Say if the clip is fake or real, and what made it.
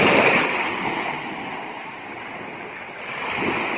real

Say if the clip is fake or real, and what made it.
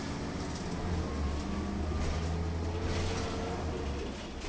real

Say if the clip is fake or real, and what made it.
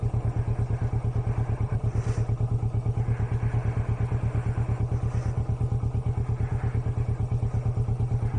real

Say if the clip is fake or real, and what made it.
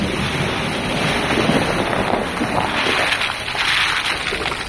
real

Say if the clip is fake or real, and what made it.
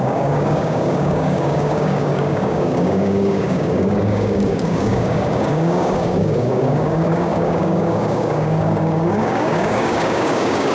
fake, codec, DAC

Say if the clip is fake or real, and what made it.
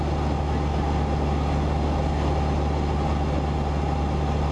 real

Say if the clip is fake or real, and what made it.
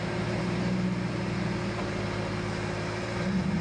real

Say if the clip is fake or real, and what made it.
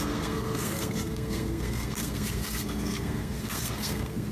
fake, codec, SNAC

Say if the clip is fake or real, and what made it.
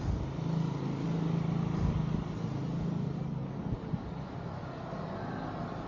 real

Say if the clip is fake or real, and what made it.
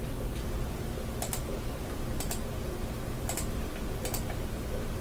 real